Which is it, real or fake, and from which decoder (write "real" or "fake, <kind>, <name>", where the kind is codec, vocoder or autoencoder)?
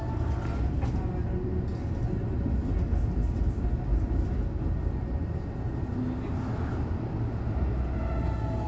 real